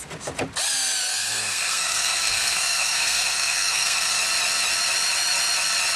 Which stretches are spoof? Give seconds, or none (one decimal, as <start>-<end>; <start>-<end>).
1.1-4.2